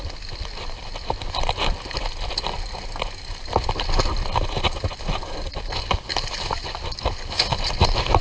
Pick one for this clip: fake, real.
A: real